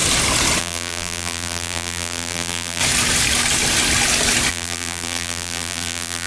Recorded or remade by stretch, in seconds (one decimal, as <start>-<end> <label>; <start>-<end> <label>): 0.0-0.6 recorded; 0.6-2.8 remade; 2.8-4.5 recorded; 4.5-6.3 remade